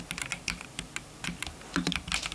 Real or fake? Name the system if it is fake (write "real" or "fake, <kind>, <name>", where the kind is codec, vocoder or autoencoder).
real